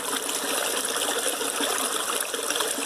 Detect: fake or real real